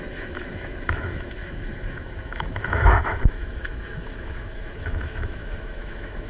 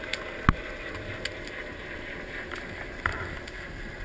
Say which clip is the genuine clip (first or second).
second